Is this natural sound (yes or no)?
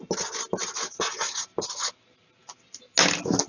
yes